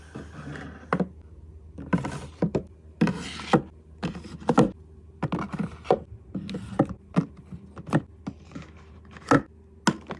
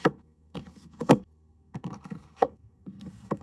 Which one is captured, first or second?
first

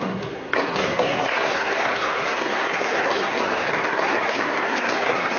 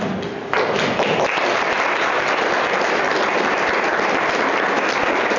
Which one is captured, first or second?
second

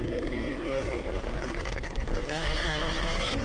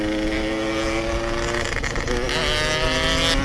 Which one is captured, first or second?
second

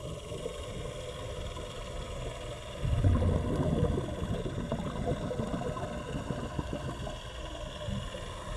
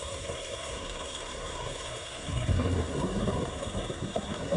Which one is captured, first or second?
first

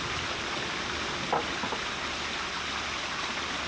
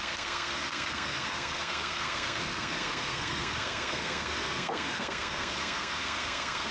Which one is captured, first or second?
first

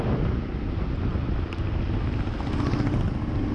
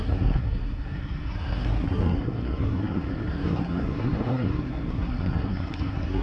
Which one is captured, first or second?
first